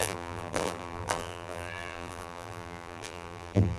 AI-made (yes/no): yes